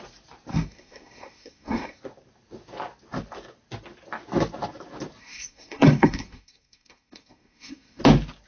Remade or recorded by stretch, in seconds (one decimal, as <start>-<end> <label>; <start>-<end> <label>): 0.0-0.5 recorded; 0.5-2.0 remade; 2.0-5.2 recorded; 5.2-8.0 remade; 8.0-8.5 recorded